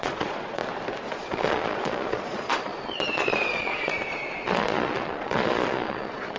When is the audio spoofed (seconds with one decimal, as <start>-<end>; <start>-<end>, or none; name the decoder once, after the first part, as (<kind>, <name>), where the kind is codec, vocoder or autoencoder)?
0.0-0.6 (vocoder, Vocos); 1.1-6.4